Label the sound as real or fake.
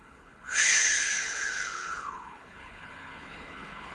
fake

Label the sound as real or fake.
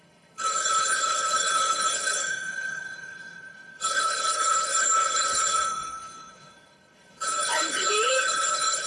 fake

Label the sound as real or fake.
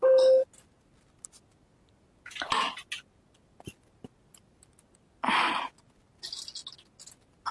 real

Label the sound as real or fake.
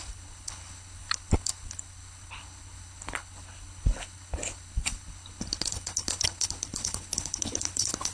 fake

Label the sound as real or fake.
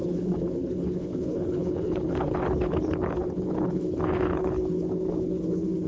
fake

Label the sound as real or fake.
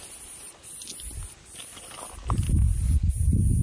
real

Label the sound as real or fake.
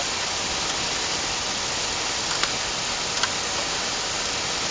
real